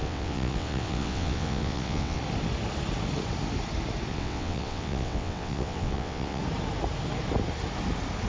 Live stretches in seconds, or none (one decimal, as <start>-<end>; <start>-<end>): 2.2-4.1; 6.4-8.3